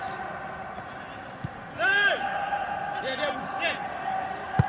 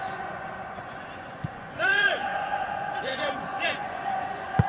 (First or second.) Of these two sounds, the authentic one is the first